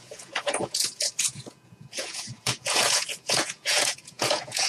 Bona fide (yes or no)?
no